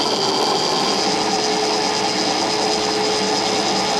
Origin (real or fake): real